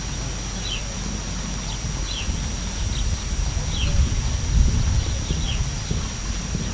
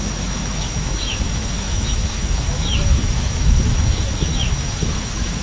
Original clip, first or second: first